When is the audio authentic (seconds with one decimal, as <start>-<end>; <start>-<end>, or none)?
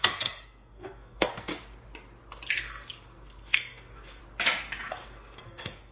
1.5-2.6; 4.2-4.9